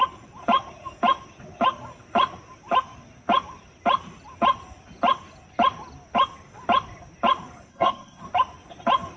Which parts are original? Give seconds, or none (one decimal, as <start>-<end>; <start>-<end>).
0.0-7.7; 8.2-9.2